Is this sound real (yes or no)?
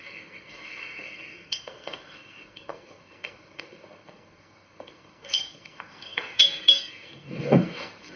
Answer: no